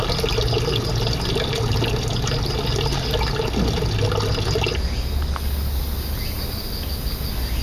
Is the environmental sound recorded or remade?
recorded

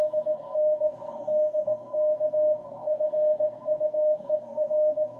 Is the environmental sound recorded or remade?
remade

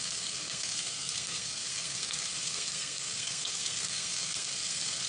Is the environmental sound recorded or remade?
remade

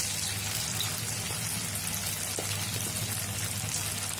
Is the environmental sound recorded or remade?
recorded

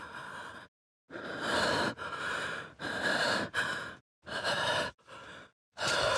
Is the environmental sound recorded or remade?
remade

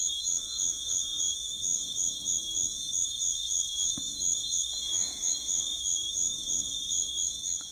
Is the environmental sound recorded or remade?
remade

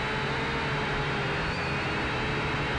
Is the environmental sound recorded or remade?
recorded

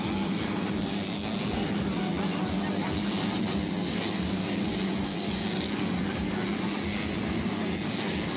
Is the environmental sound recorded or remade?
recorded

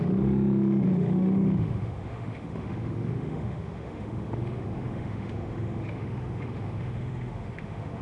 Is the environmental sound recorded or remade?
remade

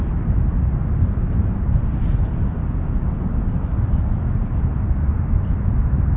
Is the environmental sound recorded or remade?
recorded